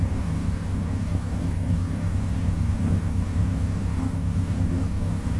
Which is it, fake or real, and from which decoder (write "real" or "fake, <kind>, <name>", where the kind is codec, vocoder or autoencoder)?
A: fake, codec, DAC